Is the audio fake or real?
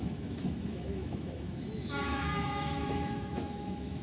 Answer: fake